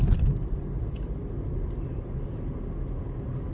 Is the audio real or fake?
fake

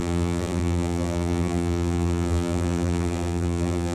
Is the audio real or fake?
fake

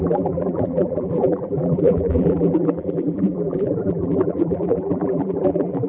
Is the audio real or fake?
fake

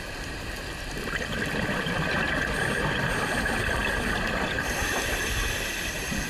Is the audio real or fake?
fake